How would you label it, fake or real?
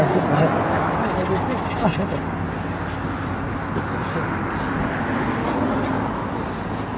real